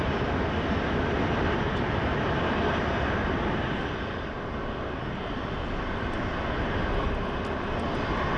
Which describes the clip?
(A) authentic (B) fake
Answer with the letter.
A